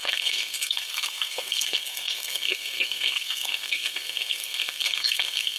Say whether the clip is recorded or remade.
remade